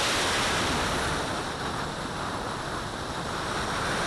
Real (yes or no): yes